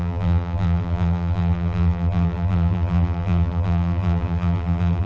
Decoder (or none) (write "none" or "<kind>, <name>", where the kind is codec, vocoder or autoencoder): vocoder, BigVGAN v2